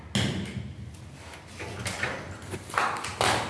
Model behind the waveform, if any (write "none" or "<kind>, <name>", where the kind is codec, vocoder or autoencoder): none